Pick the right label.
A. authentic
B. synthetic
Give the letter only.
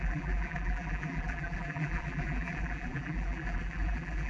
B